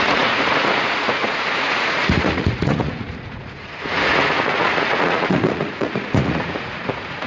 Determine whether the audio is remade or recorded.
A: remade